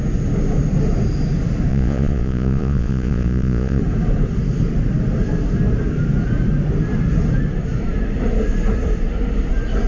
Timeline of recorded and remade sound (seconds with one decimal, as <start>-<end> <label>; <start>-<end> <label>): 0.0-1.7 recorded; 1.7-3.8 remade; 3.8-9.9 recorded